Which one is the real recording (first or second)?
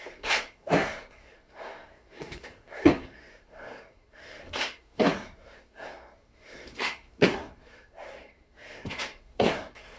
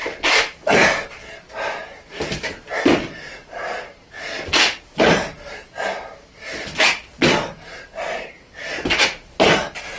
second